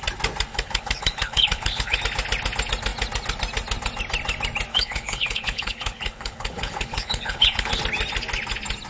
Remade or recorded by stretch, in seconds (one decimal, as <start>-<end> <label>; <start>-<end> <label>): 0.0-0.5 recorded; 0.5-2.0 remade; 2.0-4.7 recorded; 4.7-7.8 remade; 7.8-8.9 recorded